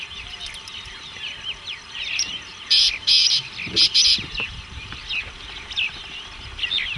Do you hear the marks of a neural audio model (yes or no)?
yes